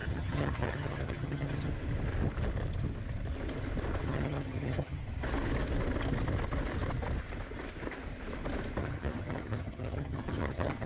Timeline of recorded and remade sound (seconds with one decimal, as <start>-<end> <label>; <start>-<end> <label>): 0.0-1.7 remade; 1.7-4.0 recorded; 4.0-5.0 remade; 5.0-8.8 recorded; 8.8-10.9 remade